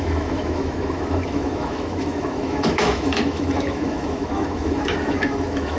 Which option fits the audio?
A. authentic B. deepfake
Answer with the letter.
B